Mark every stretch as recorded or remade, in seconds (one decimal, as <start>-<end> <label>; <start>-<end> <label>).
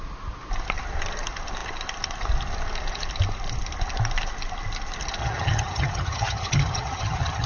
0.0-5.2 recorded; 5.2-7.5 remade